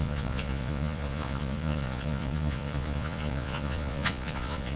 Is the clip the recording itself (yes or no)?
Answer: no